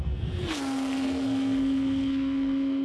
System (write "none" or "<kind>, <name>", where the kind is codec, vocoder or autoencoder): codec, SNAC